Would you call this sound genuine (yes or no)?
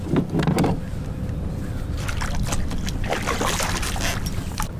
yes